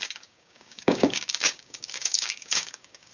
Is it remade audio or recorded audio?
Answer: remade